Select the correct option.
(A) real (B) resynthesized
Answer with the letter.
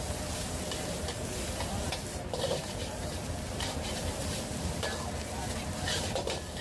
B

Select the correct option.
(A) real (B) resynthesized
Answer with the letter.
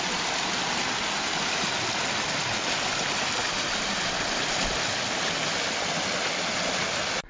A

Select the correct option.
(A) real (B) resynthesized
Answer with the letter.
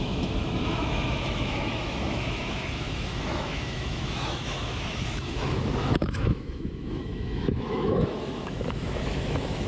B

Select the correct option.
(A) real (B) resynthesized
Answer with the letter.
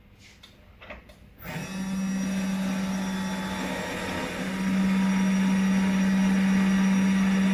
A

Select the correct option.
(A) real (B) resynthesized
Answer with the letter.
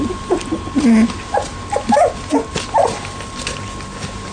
A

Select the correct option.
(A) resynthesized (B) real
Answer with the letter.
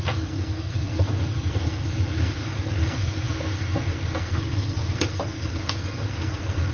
A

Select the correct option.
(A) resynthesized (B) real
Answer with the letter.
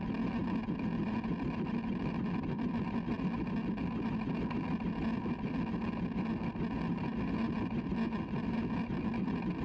B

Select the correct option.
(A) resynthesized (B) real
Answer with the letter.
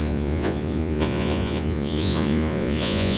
A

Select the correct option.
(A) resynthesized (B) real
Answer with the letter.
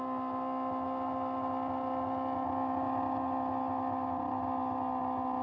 B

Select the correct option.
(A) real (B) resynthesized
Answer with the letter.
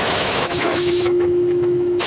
B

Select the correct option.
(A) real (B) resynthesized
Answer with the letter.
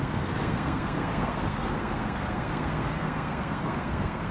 B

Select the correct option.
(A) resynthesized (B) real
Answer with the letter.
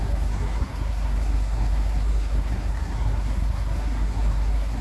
A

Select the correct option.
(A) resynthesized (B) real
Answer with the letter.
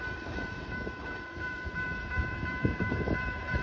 A